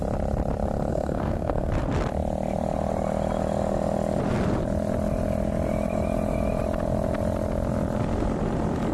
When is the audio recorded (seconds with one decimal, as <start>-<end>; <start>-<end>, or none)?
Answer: 0.0-0.9; 1.7-8.9